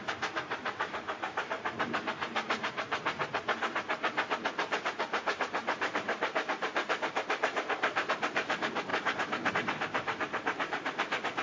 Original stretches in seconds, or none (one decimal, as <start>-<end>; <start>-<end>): 3.2-4.6